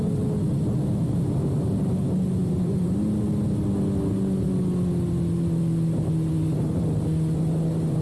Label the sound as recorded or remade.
recorded